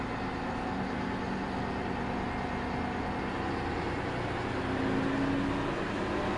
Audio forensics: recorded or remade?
recorded